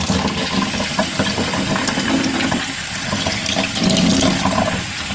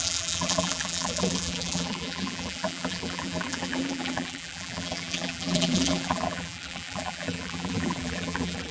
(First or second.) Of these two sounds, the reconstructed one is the second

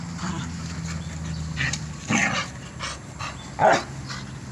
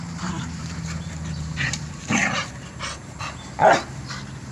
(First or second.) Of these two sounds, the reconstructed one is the second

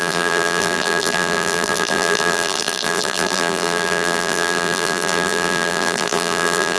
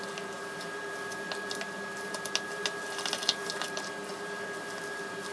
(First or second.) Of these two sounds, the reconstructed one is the first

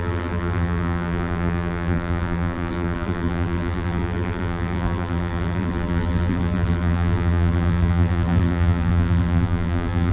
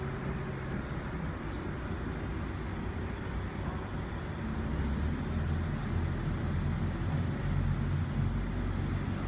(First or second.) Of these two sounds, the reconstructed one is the first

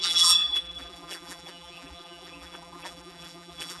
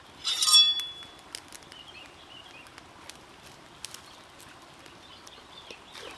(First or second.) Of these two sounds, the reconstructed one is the first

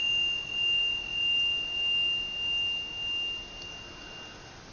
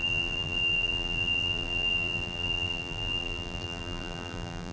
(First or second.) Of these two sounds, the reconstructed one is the second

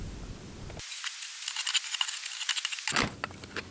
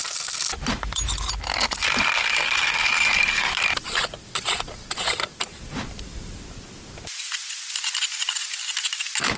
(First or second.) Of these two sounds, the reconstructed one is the second